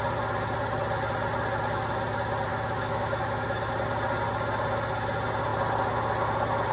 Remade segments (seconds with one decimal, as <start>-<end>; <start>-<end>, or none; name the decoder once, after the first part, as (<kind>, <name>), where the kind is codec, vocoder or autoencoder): 2.5-3.7 (autoencoder, DAC-VAE)